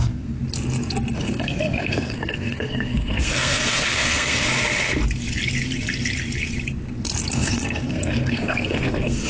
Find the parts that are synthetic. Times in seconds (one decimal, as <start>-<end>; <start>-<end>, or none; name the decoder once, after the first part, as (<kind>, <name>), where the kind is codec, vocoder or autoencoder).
0.0-0.4 (codec, SNAC); 1.1-4.5; 7.3-9.3